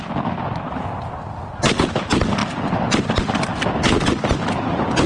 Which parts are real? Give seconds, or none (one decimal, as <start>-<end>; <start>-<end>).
0.0-5.1